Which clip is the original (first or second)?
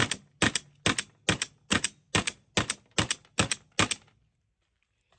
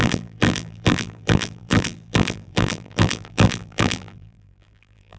first